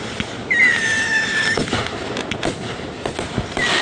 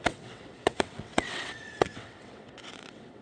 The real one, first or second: first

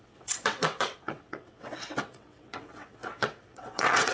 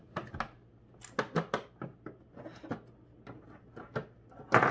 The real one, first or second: second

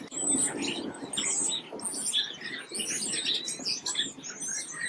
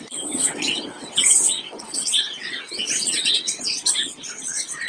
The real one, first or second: first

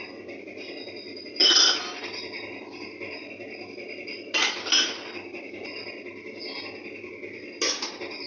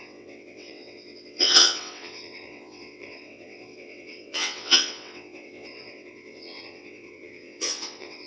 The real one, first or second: first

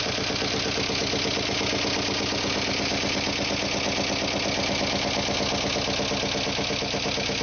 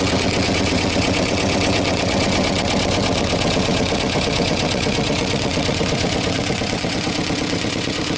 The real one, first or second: first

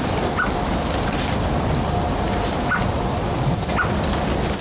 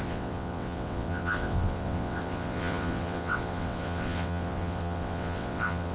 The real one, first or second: first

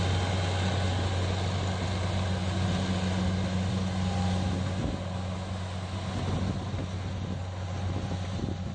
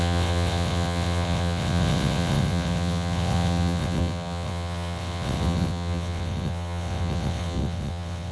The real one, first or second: first